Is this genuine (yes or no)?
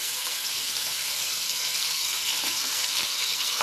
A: no